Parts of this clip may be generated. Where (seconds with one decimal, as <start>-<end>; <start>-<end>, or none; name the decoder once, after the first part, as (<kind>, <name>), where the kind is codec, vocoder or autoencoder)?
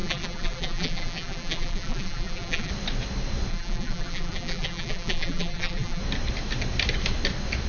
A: 0.0-2.7 (vocoder, BigVGAN v2); 3.5-6.0